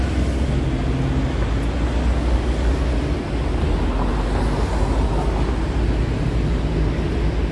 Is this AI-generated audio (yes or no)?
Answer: no